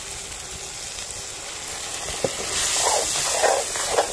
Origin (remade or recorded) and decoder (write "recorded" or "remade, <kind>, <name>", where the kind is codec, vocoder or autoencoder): recorded